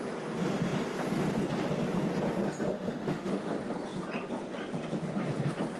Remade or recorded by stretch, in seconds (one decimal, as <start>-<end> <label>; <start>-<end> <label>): 0.0-2.7 recorded; 2.7-3.5 remade; 3.5-5.8 recorded

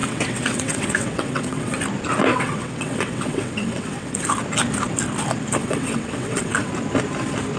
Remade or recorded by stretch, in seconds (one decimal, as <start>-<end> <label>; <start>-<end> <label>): 0.0-1.8 remade; 1.8-2.3 recorded; 2.3-4.3 remade; 4.3-5.6 recorded; 5.6-6.7 remade; 6.7-7.6 recorded

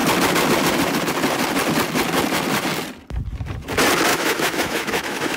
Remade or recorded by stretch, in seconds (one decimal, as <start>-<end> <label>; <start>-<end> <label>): 0.0-4.1 recorded; 4.1-5.4 remade

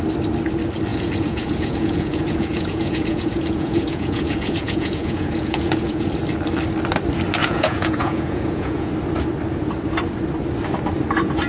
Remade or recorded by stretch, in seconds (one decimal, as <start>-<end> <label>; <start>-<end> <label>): 0.0-0.9 recorded; 0.9-6.1 remade; 6.1-7.4 recorded; 7.4-8.9 remade; 8.9-11.5 recorded

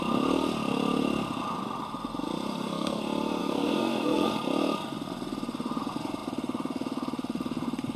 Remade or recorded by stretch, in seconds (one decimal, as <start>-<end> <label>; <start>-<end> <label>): 0.0-2.5 recorded; 2.5-3.0 remade; 3.0-3.4 recorded; 3.4-4.3 remade; 4.3-8.0 recorded

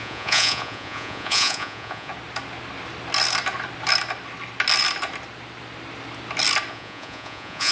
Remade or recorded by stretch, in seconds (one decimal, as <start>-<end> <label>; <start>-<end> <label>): 0.0-2.1 remade; 2.1-6.7 recorded; 6.7-7.7 remade